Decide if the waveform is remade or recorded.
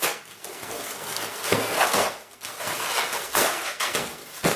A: remade